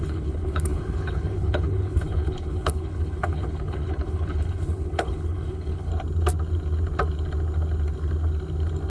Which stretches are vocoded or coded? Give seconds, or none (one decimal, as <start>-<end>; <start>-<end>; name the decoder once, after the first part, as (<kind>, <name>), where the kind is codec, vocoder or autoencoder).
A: 0.0-5.9 (codec, HILCodec)